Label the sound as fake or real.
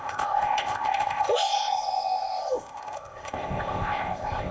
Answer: fake